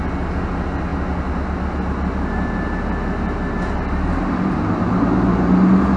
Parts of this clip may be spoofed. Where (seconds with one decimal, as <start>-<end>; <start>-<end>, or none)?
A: none